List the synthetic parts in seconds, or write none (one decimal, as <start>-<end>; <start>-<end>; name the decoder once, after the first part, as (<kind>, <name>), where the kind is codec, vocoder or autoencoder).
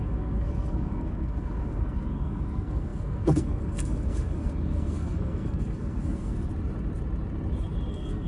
0.0-6.5 (codec, SNAC); 7.9-8.3